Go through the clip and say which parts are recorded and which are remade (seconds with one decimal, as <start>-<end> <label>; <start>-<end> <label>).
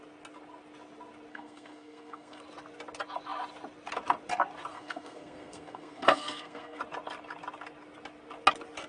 0.0-1.3 recorded; 1.3-2.4 remade; 2.4-4.7 recorded; 4.7-6.8 remade; 6.8-8.9 recorded